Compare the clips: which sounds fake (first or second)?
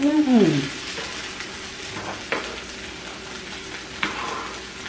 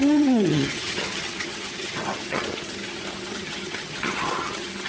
second